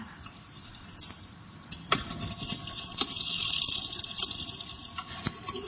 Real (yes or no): no